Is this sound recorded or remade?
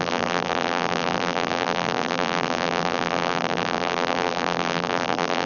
remade